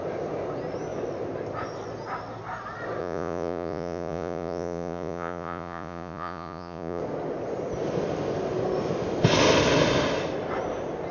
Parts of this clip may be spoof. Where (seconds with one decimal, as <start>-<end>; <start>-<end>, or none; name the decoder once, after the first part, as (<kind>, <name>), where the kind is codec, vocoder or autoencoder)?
3.0-7.0 (vocoder, Vocos)